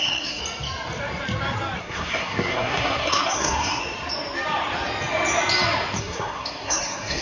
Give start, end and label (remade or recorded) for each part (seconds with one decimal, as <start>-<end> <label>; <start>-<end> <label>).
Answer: 0.0-0.4 remade; 0.4-1.8 recorded; 1.8-3.8 remade; 3.8-6.0 recorded; 6.0-7.2 remade

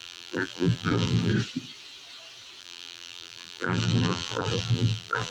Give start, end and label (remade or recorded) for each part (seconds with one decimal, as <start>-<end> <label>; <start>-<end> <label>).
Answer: 0.0-1.3 remade; 1.3-2.6 recorded; 2.6-5.3 remade

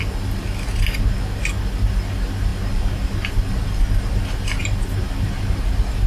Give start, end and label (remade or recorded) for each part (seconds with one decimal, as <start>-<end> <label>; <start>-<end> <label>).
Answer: 0.0-6.1 recorded

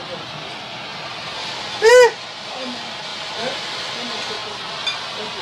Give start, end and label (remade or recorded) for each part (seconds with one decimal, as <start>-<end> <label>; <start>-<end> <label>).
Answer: 0.0-3.1 recorded; 3.1-3.9 remade; 3.9-5.4 recorded

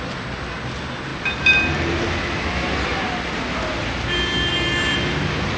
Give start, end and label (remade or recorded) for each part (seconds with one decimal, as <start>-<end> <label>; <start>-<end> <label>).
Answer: 0.0-5.6 recorded

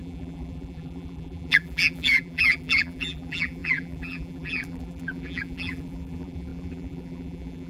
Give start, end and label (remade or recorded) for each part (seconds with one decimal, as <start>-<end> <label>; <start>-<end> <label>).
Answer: 0.0-7.7 remade

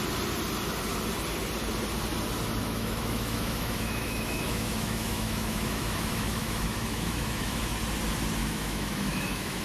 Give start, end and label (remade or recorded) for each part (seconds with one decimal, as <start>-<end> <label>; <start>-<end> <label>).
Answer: 0.0-2.6 recorded; 2.6-7.7 remade; 7.7-8.4 recorded; 8.4-9.6 remade